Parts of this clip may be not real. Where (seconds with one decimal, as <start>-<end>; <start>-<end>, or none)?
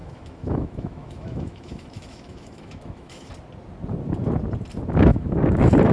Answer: 0.0-3.3; 5.1-5.9